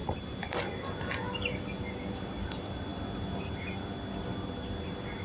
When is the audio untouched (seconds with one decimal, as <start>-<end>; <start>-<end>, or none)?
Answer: 0.0-5.2